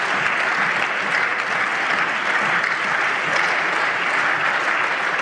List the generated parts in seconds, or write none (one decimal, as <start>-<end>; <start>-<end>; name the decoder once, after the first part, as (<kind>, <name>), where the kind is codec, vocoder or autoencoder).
none